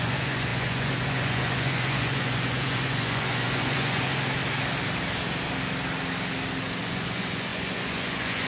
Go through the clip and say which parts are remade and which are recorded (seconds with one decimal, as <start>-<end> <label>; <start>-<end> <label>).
0.0-4.1 remade; 4.1-6.8 recorded; 6.8-8.5 remade